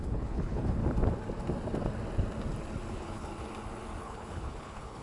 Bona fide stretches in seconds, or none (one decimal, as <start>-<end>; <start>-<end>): 0.8-2.9; 3.3-4.0